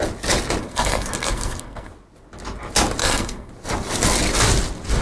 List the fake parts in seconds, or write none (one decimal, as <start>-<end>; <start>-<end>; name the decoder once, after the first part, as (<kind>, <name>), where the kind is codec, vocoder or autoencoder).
0.6-1.9 (codec, SNAC); 3.0-3.5